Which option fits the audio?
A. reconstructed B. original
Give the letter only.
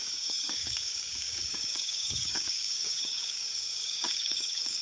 A